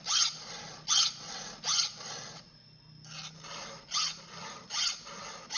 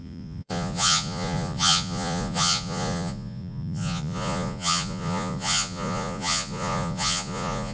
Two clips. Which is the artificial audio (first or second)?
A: second